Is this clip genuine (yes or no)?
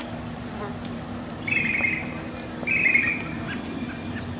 yes